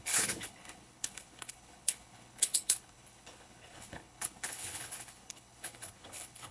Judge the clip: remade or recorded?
remade